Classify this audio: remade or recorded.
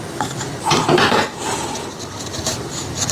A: remade